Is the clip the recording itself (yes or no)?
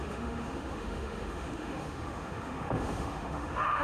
no